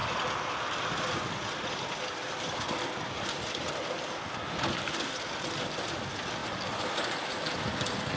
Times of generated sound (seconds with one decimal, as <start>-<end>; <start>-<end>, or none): none